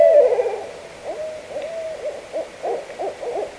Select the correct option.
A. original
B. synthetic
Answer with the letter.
A